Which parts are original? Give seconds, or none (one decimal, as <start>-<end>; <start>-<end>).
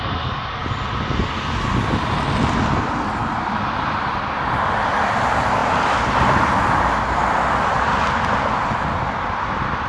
0.0-3.2; 5.1-5.6; 6.7-9.9